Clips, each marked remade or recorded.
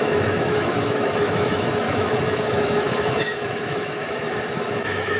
remade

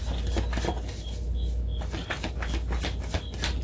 recorded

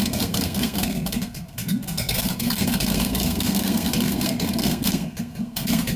remade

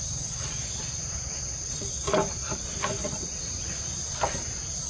recorded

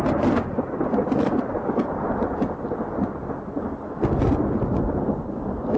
recorded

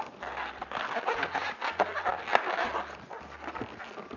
recorded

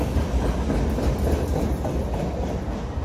recorded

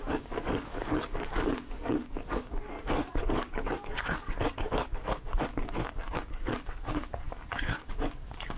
remade